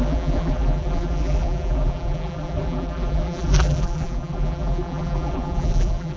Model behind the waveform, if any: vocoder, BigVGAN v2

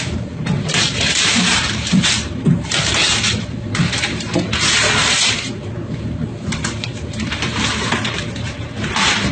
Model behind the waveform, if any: vocoder, BigVGAN v2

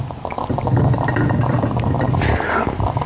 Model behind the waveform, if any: vocoder, BigVGAN v2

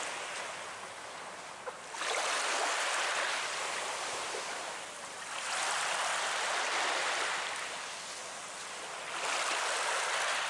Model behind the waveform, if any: none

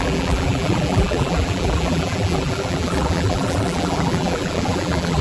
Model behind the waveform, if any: vocoder, BigVGAN v2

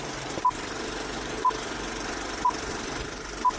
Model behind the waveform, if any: vocoder, BigVGAN v2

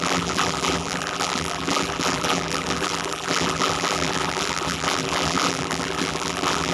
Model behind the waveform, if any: vocoder, BigVGAN v2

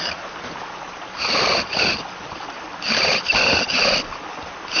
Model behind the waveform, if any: none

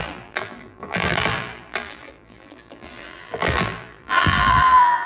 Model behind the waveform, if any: vocoder, BigVGAN v2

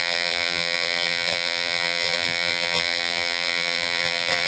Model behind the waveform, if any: vocoder, BigVGAN v2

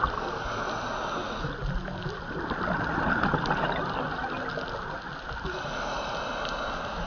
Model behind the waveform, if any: none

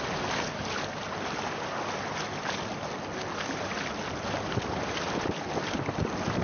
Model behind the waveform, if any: none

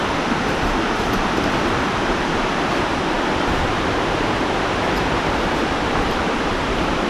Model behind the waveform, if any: vocoder, BigVGAN v2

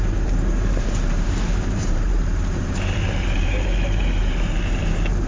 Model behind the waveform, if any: vocoder, BigVGAN v2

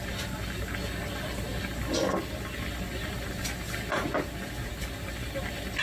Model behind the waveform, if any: none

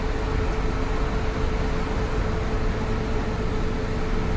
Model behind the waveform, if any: none